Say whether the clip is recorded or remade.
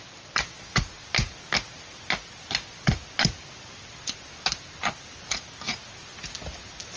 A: recorded